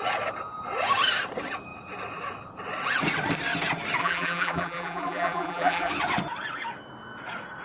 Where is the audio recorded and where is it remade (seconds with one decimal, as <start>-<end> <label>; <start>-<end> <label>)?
0.0-4.0 recorded; 4.0-5.9 remade; 5.9-7.6 recorded

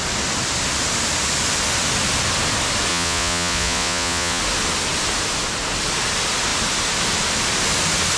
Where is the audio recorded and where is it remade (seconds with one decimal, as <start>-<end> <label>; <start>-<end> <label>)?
0.0-2.9 recorded; 2.9-4.4 remade; 4.4-8.2 recorded

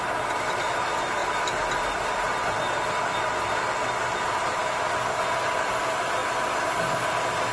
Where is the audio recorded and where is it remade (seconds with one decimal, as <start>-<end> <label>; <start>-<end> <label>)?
0.0-1.2 recorded; 1.2-2.6 remade; 2.6-7.5 recorded

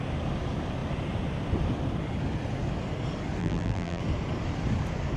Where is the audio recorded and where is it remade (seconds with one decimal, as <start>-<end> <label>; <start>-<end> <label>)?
0.0-3.4 recorded; 3.4-4.0 remade; 4.0-5.2 recorded

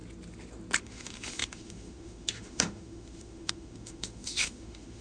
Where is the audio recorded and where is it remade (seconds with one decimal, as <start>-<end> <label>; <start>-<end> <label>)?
0.0-0.8 recorded; 0.8-5.0 remade

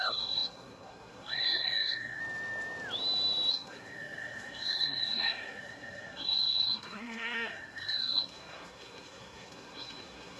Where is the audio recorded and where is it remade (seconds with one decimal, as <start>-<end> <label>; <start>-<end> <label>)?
0.0-2.2 remade; 2.2-3.5 recorded; 3.5-10.4 remade